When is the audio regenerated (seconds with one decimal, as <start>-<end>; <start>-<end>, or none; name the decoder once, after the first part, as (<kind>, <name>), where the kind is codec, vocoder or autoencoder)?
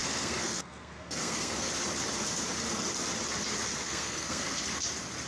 0.0-1.7 (codec, SNAC); 3.8-4.7